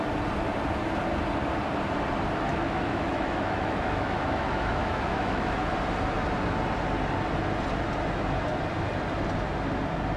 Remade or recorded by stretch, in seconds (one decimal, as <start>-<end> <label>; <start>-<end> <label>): 0.0-2.5 recorded; 2.5-5.7 remade; 5.7-10.2 recorded